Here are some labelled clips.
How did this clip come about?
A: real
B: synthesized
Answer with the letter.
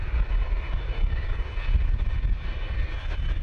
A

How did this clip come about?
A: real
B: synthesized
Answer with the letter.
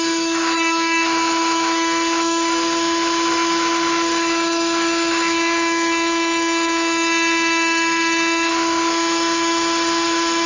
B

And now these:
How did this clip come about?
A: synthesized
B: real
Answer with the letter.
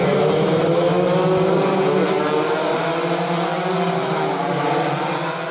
B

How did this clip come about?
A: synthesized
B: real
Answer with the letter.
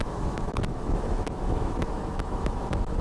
A